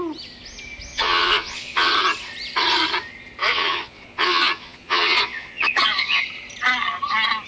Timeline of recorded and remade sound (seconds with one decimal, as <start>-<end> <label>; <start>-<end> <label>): 0.0-0.9 recorded; 0.9-1.9 remade; 1.9-3.4 recorded; 3.4-6.2 remade; 6.2-7.5 recorded